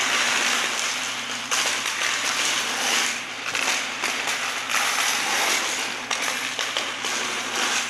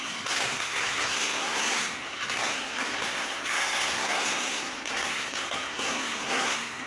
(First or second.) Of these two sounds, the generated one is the second